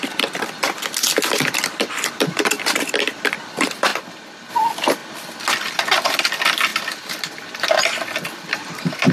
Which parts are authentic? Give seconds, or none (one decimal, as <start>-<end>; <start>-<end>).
3.9-4.5; 5.0-5.8; 6.7-7.5

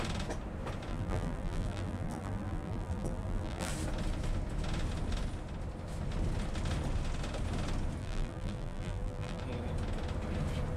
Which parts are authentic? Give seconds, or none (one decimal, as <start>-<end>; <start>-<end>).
0.0-0.9; 3.7-8.0; 9.4-10.8

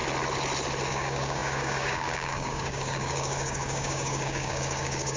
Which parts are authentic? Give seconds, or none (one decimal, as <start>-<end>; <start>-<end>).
0.0-0.9

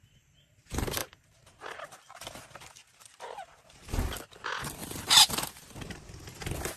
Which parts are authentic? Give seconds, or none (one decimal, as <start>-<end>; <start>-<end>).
0.0-4.8; 5.3-6.8